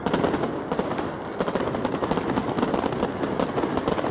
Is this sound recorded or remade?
recorded